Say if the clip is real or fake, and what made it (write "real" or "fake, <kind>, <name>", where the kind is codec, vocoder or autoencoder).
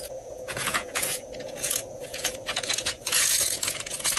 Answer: fake, vocoder, Vocos